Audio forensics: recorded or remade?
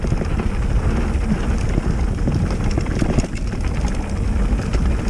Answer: recorded